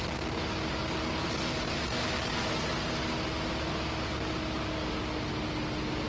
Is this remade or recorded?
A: recorded